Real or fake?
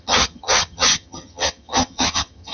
fake